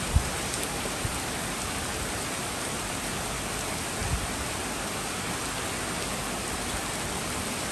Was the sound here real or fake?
real